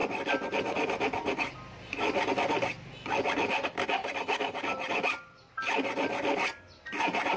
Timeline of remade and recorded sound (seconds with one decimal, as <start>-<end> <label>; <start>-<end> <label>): 0.0-7.4 recorded